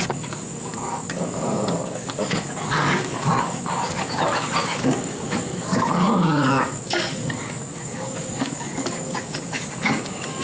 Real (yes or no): no